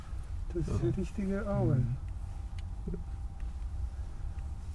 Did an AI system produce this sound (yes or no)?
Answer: no